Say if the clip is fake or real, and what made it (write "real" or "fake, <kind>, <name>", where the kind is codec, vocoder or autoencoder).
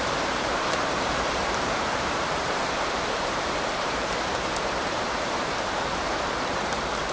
fake, vocoder, BigVGAN v2